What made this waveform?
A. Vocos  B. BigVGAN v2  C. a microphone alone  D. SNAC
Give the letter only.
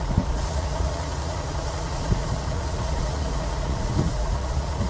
A